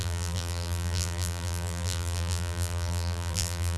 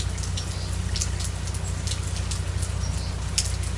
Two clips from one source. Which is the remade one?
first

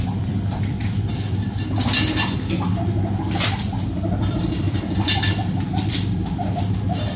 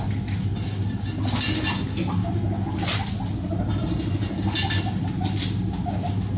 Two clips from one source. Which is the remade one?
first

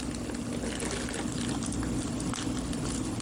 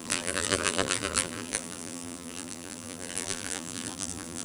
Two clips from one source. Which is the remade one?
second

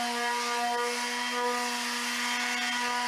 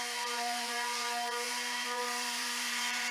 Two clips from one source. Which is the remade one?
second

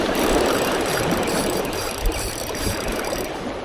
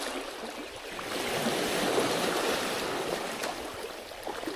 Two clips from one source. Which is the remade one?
first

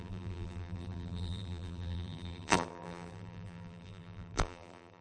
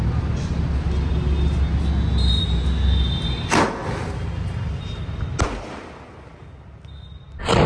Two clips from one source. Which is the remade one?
first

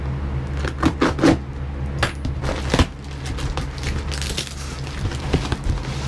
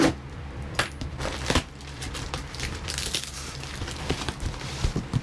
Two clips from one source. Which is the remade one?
second